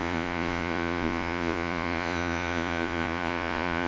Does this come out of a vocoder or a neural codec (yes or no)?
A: yes